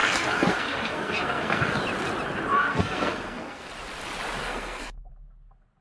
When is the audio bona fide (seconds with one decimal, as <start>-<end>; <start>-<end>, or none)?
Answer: 1.8-2.5; 3.7-4.4; 5.1-5.8